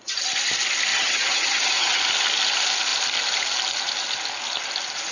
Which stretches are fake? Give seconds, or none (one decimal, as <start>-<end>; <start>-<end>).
0.9-2.0